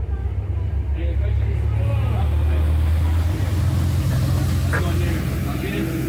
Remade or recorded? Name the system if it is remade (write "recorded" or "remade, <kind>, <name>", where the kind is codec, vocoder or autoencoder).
recorded